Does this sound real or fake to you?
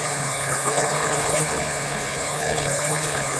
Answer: fake